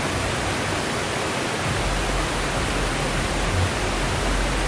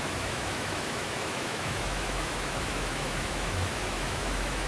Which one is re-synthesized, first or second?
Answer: second